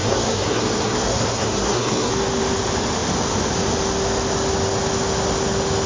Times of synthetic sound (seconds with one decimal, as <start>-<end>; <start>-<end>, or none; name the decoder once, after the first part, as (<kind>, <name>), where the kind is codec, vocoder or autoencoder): 0.0-2.1 (codec, SNAC)